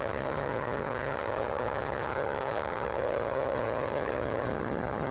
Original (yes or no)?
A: no